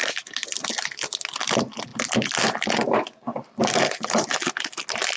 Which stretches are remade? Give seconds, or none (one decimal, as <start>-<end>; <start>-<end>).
none